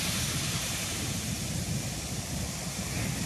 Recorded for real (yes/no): yes